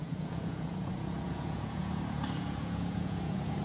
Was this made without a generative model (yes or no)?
no